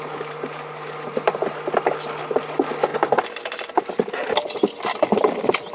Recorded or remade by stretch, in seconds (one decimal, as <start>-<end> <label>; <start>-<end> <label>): 0.0-5.7 recorded